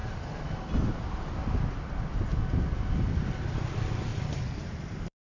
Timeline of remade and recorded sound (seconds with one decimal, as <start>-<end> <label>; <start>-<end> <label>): 0.0-4.1 recorded; 4.1-5.2 remade